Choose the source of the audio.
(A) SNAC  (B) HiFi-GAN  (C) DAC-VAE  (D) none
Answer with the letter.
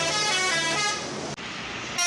D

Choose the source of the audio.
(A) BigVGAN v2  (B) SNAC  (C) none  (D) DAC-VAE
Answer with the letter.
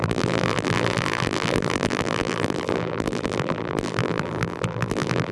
A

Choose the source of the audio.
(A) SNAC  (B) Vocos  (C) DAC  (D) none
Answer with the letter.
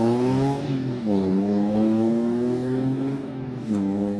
C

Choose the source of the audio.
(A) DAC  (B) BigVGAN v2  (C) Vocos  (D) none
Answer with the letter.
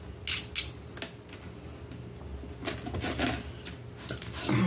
D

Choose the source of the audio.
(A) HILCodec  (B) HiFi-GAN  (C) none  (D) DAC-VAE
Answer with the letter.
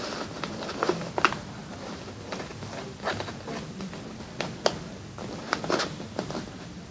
C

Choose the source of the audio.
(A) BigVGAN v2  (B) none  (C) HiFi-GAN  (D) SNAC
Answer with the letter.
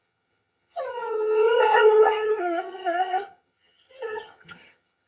C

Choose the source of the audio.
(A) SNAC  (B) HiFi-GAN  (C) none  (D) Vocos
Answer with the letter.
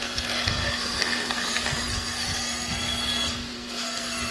A